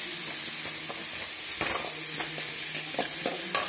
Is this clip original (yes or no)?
yes